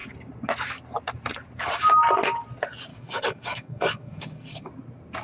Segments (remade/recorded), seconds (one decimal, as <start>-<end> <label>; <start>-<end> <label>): 0.0-2.9 recorded; 2.9-4.7 remade; 4.7-5.2 recorded

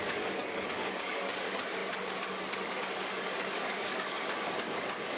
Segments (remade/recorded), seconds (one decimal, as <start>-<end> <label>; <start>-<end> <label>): 0.0-5.2 remade

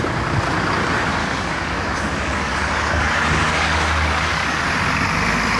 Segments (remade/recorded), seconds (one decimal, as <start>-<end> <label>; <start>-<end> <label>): 0.0-1.2 recorded; 1.2-4.6 remade; 4.6-5.6 recorded

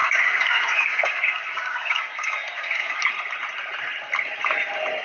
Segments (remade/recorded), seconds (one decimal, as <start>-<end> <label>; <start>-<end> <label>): 0.0-3.0 remade; 3.0-5.0 recorded

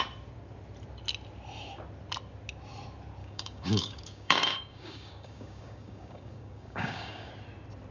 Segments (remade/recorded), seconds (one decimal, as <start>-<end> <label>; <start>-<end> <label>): 0.0-3.2 recorded; 3.2-7.3 remade; 7.3-7.9 recorded

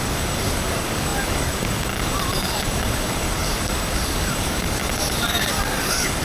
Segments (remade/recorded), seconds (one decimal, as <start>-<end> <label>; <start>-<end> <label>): 0.0-6.2 remade

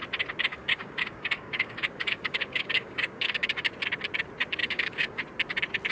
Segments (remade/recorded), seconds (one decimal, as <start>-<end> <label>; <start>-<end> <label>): 0.0-0.5 recorded; 0.5-3.7 remade; 3.7-4.6 recorded; 4.6-5.2 remade; 5.2-5.9 recorded

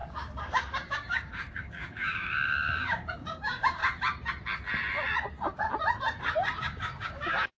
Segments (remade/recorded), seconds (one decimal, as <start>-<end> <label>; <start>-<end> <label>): 0.0-3.8 remade; 3.8-6.6 recorded; 6.6-7.6 remade